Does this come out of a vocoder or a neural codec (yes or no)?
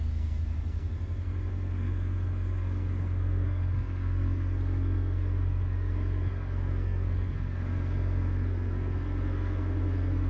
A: yes